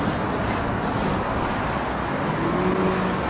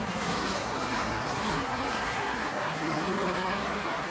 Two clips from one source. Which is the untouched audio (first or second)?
first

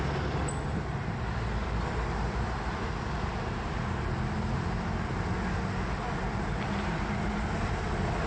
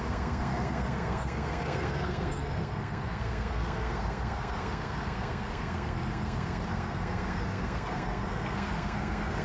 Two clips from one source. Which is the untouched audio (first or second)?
first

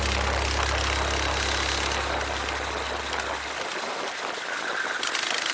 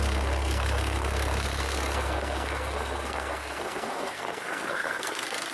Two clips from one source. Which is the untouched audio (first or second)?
first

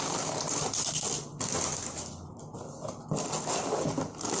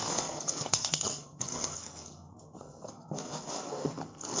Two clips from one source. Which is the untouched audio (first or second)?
first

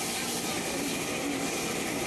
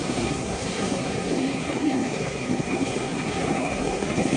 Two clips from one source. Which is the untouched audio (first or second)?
first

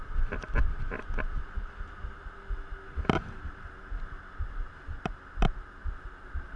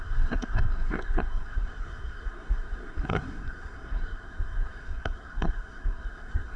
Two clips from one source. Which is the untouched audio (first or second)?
first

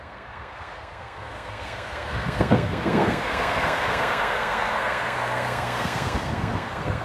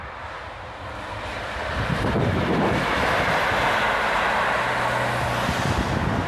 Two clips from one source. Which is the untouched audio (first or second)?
second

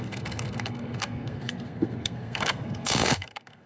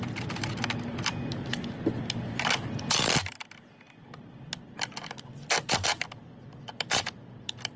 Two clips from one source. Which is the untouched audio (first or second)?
second